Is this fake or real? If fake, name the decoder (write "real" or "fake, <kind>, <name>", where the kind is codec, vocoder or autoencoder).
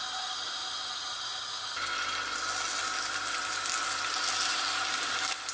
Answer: real